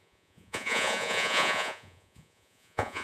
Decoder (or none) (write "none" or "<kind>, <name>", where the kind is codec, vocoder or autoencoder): vocoder, Vocos